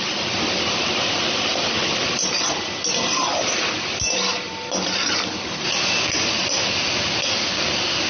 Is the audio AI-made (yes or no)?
no